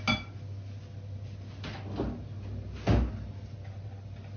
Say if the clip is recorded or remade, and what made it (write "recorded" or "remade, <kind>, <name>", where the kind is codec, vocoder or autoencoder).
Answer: recorded